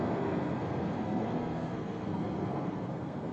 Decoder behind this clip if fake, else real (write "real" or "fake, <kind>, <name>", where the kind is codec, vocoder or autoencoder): fake, codec, SNAC